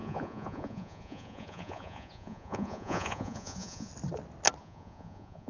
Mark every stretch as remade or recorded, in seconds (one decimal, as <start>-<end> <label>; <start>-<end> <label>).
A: 0.0-3.9 remade; 3.9-4.6 recorded; 4.6-5.5 remade